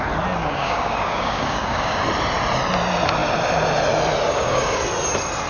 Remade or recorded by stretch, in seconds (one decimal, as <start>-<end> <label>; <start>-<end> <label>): 0.0-0.4 recorded; 0.4-2.0 remade; 2.0-4.3 recorded; 4.3-4.8 remade; 4.8-5.5 recorded